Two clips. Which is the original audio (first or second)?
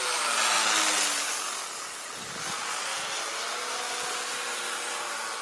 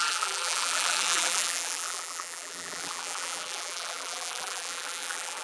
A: first